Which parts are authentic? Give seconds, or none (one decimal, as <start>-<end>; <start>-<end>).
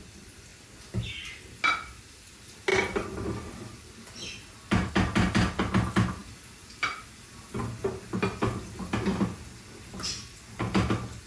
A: 0.0-11.3